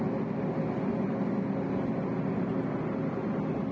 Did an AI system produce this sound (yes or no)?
no